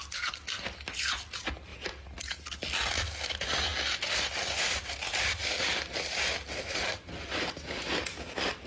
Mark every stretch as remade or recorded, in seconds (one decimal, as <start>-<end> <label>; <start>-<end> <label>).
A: 0.0-8.7 recorded